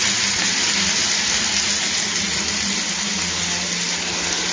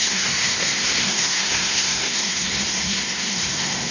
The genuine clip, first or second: first